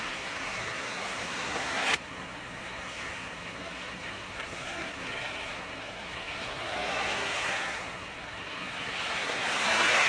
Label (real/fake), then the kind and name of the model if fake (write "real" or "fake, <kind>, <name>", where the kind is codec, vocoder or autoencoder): fake, codec, SNAC